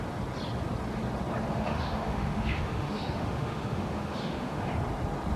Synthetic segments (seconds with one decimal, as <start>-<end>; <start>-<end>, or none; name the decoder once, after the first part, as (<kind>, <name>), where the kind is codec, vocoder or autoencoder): 1.5-4.7 (autoencoder, DAC-VAE)